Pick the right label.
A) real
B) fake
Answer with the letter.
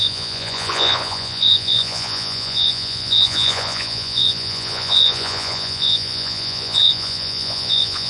B